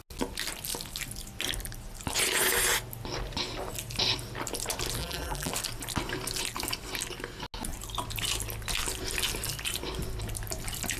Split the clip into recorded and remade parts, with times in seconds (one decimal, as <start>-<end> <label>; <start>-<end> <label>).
0.0-5.0 recorded; 5.0-5.5 remade; 5.5-11.0 recorded